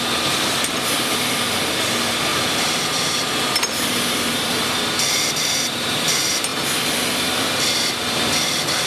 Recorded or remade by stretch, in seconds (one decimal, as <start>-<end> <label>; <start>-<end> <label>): 0.0-2.3 recorded; 2.3-4.8 remade; 4.8-8.9 recorded